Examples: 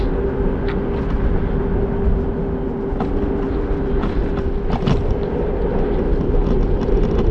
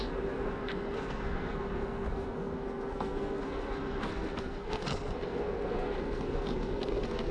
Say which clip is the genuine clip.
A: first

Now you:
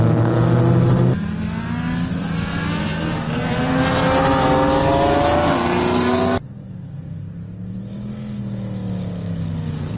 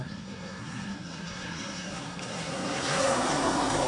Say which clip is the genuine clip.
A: first